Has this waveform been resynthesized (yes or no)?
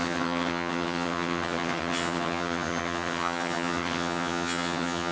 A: yes